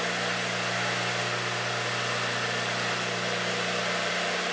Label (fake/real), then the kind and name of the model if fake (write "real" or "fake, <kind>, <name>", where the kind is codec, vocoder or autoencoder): real